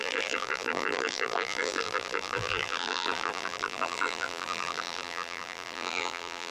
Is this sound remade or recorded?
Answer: remade